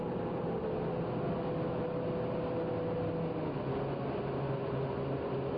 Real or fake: real